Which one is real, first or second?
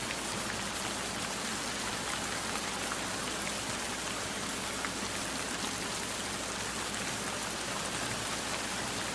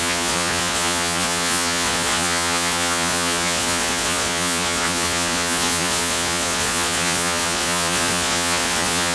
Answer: first